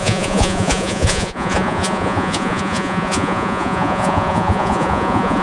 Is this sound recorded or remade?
remade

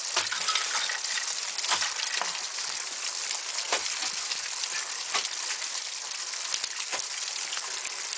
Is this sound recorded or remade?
recorded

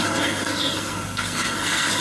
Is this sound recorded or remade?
remade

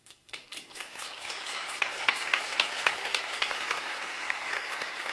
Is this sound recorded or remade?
remade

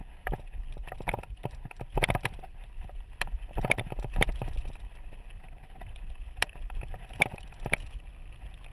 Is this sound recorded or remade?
recorded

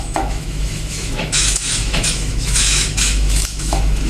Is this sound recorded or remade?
remade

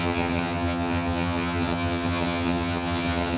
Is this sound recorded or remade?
remade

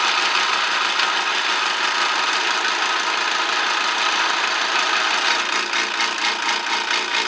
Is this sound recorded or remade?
recorded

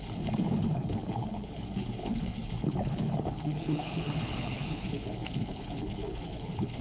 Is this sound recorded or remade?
remade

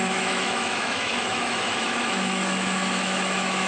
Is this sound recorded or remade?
remade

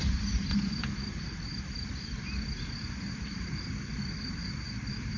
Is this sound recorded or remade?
recorded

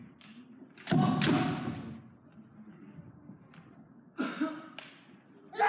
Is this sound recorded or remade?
recorded